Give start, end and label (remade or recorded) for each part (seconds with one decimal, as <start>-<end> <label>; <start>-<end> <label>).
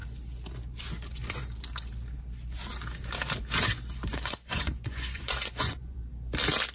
0.0-4.1 recorded; 4.1-6.0 remade; 6.0-6.7 recorded